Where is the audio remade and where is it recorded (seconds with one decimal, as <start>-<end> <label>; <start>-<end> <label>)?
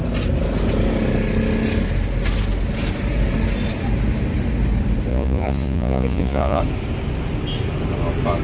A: 0.0-5.1 recorded; 5.1-6.6 remade; 6.6-8.4 recorded